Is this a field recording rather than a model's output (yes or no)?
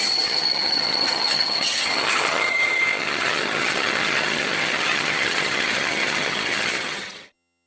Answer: no